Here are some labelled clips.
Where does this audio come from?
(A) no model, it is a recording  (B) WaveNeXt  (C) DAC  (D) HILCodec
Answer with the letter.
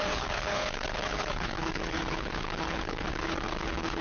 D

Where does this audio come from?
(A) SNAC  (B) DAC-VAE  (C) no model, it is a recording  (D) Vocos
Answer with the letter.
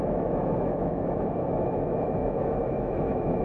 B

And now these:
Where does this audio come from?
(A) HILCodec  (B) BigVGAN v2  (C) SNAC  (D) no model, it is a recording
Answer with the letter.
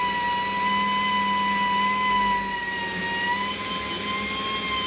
D